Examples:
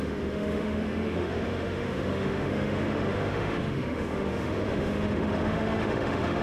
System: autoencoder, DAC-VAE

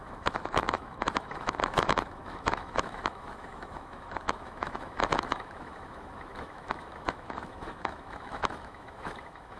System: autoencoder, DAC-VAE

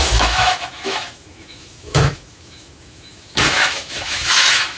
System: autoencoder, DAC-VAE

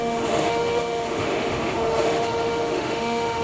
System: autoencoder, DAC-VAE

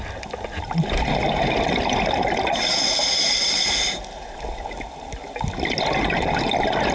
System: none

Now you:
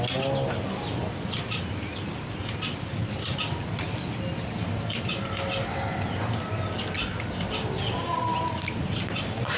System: none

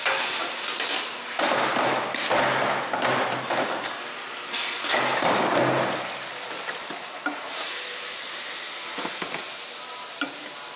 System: none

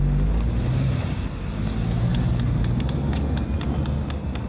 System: none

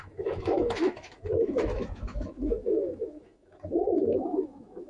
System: autoencoder, DAC-VAE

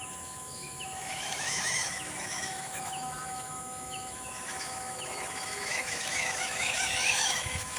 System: autoencoder, DAC-VAE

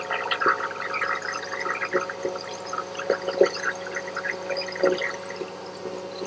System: none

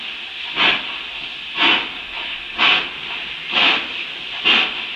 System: none